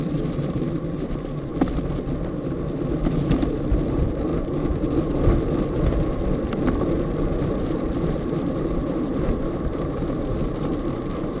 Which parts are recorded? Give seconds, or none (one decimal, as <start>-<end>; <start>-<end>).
1.5-2.9; 4.3-7.2